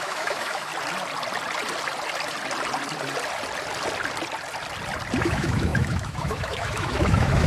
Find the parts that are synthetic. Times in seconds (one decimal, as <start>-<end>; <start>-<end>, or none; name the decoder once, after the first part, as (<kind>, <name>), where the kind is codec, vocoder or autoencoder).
0.0-0.7 (autoencoder, DAC-VAE); 5.2-7.5